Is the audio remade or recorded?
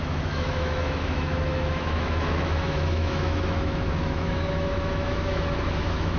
remade